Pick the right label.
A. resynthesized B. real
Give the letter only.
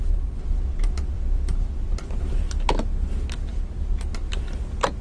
B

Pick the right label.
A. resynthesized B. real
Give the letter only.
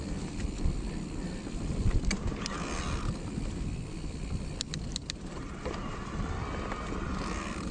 B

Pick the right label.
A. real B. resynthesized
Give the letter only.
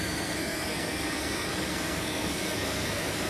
B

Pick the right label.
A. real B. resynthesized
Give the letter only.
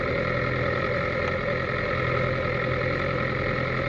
A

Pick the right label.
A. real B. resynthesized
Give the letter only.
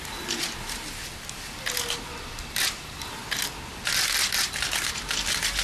A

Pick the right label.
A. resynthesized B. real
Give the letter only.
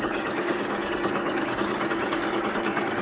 A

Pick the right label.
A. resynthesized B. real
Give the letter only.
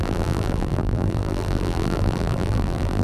A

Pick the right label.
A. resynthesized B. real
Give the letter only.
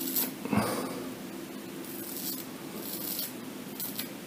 B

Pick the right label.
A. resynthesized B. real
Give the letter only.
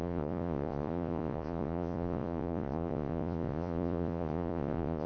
A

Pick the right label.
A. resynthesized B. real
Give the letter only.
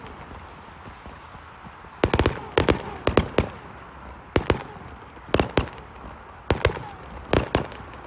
B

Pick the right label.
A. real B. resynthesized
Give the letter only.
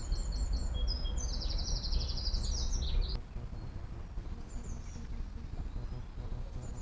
A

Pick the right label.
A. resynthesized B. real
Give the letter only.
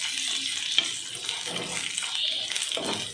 B